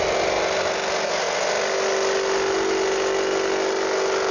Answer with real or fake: real